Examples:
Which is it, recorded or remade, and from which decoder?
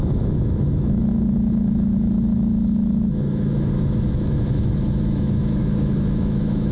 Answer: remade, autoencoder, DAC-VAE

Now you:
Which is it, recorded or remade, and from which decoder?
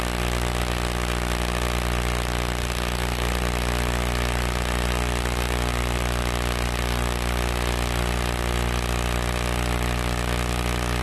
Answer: recorded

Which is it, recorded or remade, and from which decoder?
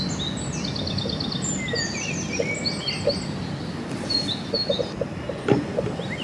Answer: recorded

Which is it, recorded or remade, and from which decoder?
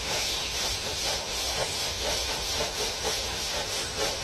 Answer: remade, autoencoder, DAC-VAE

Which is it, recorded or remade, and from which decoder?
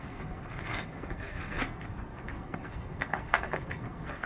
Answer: remade, codec, SNAC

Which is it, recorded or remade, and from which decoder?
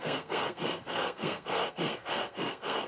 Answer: remade, codec, SNAC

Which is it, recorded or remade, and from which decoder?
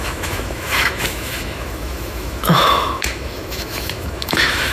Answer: remade, autoencoder, DAC-VAE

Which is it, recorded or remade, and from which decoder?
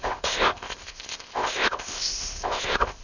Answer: remade, codec, ZipCodec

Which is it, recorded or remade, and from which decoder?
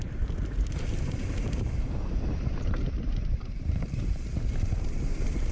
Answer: remade, vocoder, BigVGAN v2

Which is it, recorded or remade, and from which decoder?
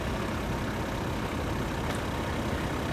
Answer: recorded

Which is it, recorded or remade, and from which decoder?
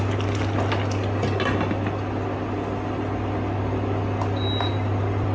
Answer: recorded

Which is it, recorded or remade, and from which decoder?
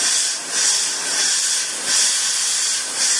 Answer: recorded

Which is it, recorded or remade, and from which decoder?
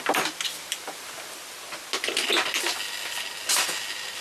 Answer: recorded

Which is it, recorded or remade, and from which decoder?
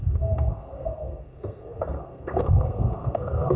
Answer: remade, codec, SNAC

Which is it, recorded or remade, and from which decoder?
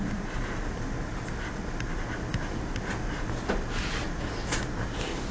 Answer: recorded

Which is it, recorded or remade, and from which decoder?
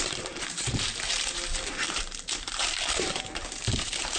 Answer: remade, vocoder, BigVGAN v2